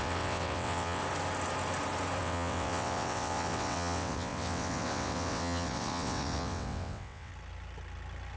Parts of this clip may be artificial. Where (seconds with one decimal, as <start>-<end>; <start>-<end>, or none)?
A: 0.0-1.0; 2.2-7.3